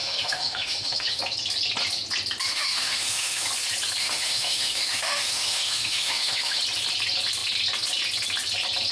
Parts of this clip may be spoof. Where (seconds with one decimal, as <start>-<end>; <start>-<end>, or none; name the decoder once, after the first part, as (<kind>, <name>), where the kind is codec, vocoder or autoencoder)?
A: 0.0-1.2 (autoencoder, DAC-VAE); 2.5-3.5; 4.0-6.6